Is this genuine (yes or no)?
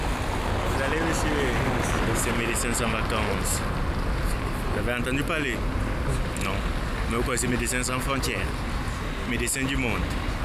yes